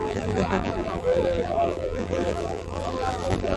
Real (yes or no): no